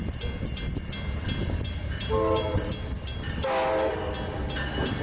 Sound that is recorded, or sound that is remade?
recorded